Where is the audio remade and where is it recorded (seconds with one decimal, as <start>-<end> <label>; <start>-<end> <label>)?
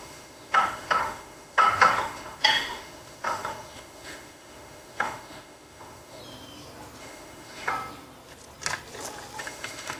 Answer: 0.0-6.2 remade; 6.2-7.0 recorded; 7.0-7.7 remade; 7.7-9.4 recorded; 9.4-10.0 remade